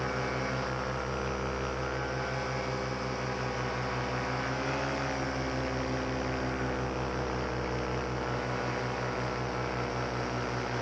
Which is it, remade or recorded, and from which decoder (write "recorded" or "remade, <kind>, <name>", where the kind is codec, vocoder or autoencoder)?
recorded